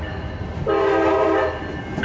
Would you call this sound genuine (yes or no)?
yes